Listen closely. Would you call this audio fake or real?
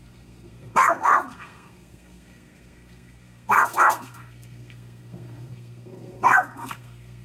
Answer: fake